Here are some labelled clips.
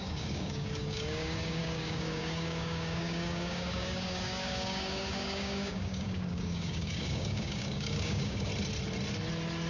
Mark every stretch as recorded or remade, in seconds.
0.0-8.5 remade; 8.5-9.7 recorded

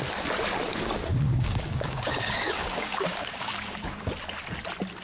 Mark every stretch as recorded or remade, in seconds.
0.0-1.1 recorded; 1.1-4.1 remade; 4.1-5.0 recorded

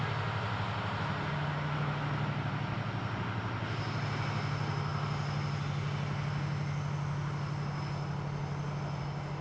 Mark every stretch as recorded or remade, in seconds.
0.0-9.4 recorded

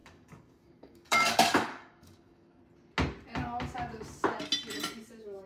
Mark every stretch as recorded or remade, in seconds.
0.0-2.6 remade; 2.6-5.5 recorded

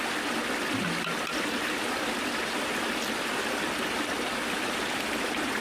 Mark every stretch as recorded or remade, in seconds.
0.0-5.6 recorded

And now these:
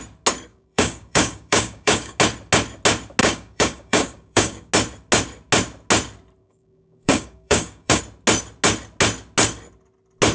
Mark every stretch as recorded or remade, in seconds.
0.0-0.5 recorded; 0.5-2.2 remade; 2.2-3.2 recorded; 3.2-4.7 remade; 4.7-6.4 recorded; 6.4-8.0 remade; 8.0-10.3 recorded